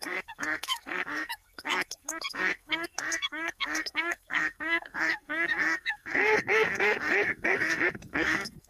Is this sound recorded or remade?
remade